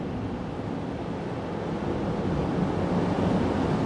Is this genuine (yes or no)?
yes